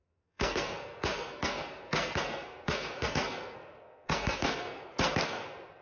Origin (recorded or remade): remade